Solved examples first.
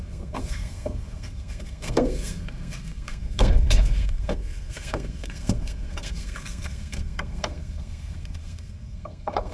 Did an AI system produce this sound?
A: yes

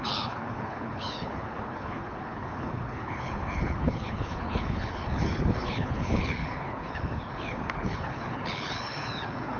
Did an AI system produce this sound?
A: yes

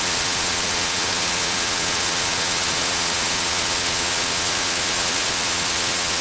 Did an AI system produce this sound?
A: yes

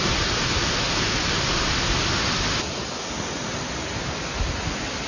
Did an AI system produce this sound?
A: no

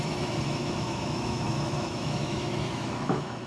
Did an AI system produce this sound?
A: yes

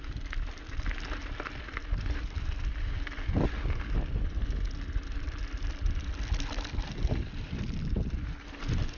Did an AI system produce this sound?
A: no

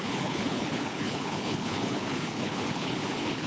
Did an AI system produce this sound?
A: yes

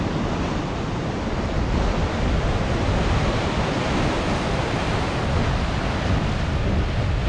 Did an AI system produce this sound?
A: no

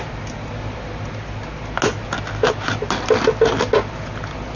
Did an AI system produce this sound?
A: no